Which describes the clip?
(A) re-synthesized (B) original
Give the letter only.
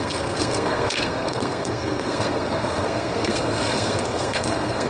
A